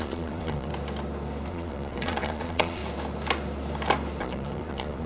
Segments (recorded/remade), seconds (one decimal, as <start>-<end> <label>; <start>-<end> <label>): 0.0-0.7 remade; 0.7-1.5 recorded; 1.5-2.8 remade; 2.8-4.2 recorded; 4.2-5.1 remade